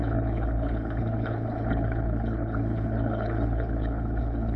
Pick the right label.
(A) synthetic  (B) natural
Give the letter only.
A